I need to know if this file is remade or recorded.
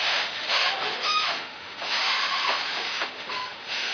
remade